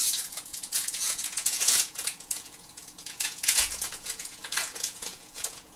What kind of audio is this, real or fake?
fake